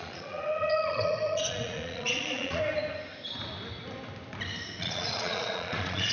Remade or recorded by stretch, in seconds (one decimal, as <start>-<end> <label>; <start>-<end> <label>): 0.0-2.6 remade; 2.6-4.8 recorded; 4.8-6.1 remade